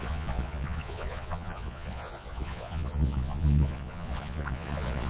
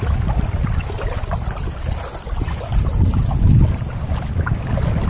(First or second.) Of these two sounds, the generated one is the first